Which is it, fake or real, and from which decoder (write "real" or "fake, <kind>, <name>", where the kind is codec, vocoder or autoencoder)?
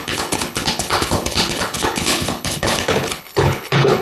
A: fake, codec, HILCodec